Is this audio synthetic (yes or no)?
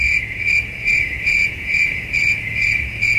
yes